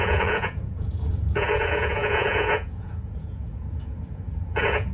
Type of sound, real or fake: fake